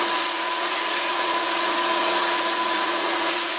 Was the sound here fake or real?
fake